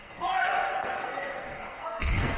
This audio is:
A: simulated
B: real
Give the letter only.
A